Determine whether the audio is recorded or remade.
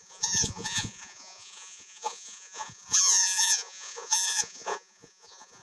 remade